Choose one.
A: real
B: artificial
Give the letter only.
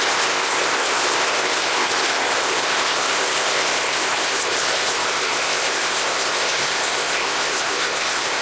B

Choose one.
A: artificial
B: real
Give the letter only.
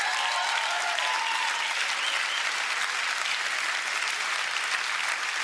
B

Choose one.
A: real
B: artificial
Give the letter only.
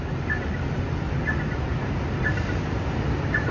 A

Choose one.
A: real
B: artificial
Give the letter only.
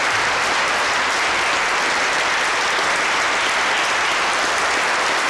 A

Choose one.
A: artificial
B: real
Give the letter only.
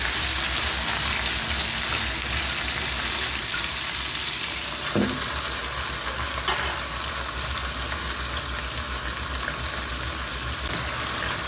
B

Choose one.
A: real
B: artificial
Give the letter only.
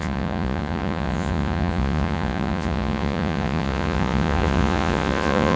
B